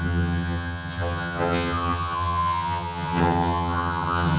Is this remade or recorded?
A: remade